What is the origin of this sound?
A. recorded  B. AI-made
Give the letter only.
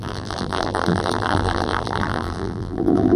B